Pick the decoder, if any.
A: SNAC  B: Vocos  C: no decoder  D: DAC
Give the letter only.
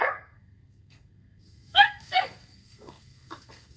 A